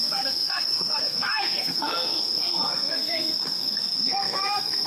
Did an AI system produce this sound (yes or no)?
yes